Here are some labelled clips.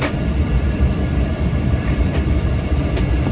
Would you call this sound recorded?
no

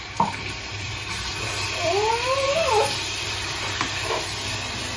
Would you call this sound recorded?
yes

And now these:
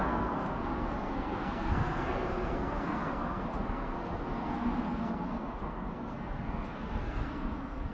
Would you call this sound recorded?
no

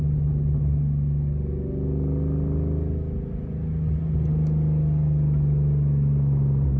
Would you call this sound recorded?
yes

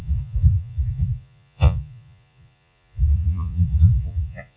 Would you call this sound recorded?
no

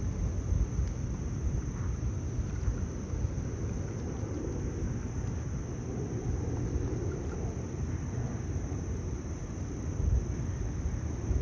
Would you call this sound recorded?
yes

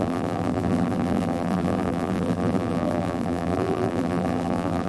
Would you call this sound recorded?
no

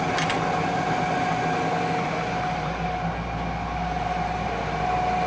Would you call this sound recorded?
yes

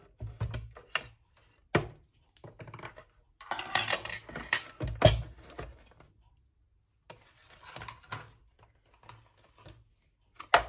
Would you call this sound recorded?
yes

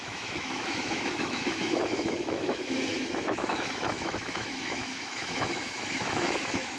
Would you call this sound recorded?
no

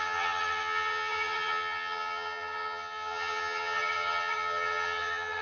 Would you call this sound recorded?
no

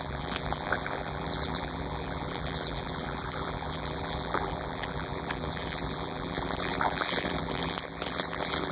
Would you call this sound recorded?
no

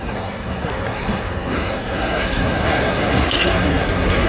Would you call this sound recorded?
no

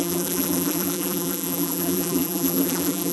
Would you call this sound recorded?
no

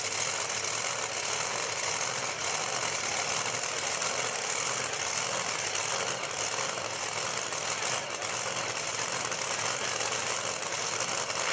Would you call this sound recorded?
yes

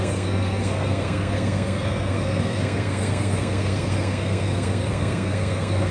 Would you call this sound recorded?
no